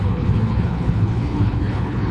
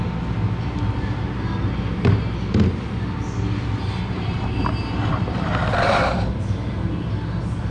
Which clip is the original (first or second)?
second